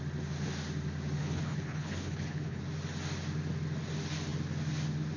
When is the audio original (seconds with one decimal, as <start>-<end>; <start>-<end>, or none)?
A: 0.0-1.2; 2.6-5.2